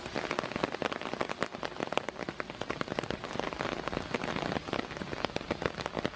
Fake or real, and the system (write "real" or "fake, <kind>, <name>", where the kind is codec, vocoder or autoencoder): real